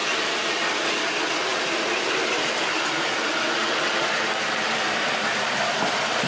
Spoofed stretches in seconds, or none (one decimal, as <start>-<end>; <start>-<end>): 0.0-6.3